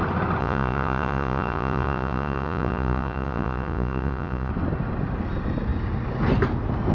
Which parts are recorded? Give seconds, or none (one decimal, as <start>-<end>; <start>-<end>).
0.0-0.4; 4.5-6.9